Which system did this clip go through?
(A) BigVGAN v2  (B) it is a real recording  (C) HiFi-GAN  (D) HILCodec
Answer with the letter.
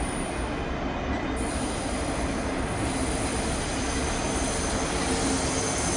B